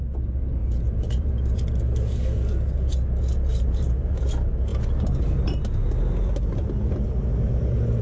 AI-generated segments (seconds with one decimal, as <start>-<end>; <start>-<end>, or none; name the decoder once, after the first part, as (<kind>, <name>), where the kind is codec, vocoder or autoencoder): 0.6-1.3 (vocoder, BigVGAN v2); 3.5-4.2